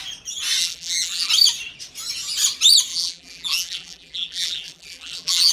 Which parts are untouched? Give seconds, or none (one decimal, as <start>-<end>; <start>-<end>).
0.0-0.6; 1.3-2.9